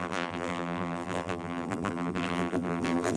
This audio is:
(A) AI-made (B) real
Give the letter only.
A